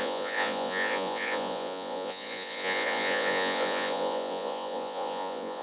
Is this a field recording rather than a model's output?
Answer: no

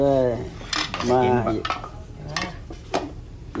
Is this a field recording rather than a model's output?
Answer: yes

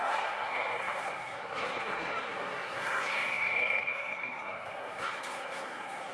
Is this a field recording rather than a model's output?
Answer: no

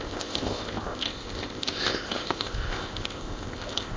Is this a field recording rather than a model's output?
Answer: no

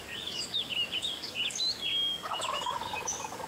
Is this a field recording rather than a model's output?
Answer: no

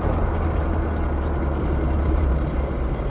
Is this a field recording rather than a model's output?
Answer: no